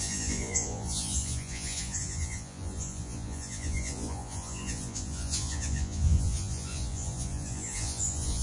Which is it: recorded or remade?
remade